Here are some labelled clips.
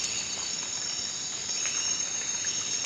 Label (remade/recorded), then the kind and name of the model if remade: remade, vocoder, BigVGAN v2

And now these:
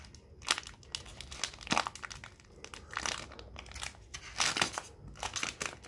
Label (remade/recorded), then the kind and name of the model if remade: recorded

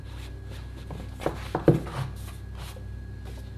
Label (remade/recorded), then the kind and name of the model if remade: recorded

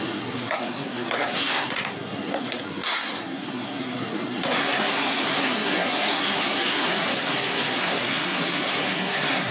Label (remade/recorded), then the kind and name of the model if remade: remade, codec, SNAC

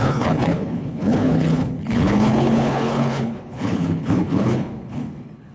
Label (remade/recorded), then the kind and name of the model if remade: remade, codec, HILCodec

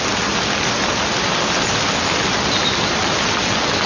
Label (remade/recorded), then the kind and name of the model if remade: recorded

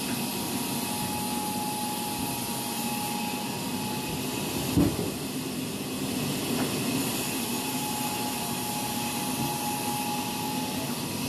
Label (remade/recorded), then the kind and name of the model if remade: recorded